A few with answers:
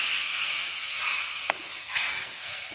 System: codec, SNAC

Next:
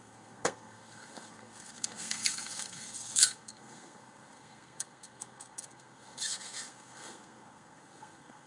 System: codec, SNAC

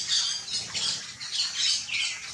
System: none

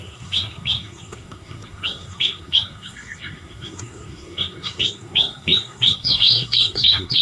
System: codec, SNAC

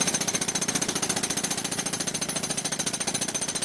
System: none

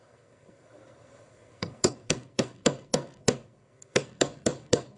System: codec, SNAC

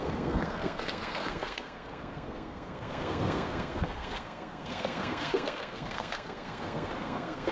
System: codec, SNAC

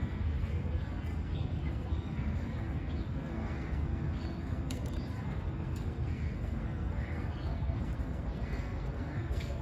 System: codec, SNAC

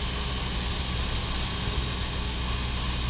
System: none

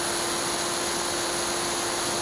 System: none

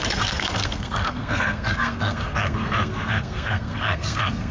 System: codec, SNAC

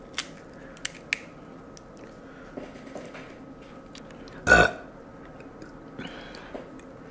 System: none